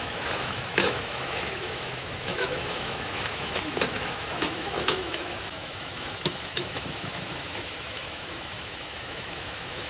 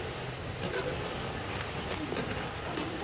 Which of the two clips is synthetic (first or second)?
first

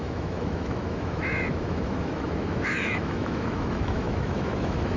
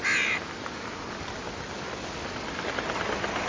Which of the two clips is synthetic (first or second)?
first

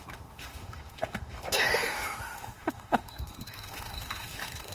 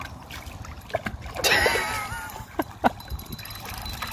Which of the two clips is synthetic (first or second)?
first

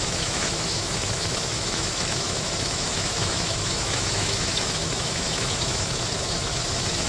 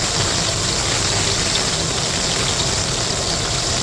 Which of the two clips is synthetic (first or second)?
first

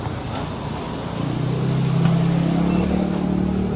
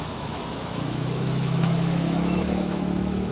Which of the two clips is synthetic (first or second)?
second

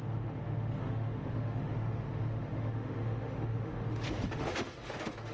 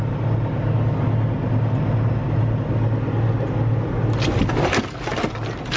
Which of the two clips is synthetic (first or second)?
first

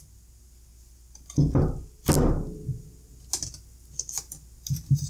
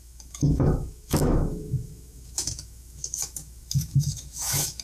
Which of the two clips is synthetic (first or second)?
second